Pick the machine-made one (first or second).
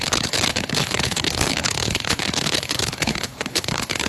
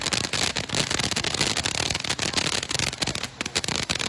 first